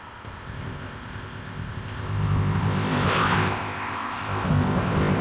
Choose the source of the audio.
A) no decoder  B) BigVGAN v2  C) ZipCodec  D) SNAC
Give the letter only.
C